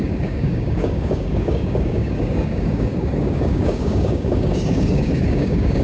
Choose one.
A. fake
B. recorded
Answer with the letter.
A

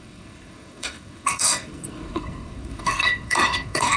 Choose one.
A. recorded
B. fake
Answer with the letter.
B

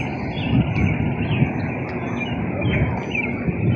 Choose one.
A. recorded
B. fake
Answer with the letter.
A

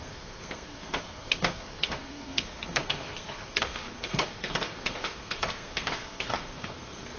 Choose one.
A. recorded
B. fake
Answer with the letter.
B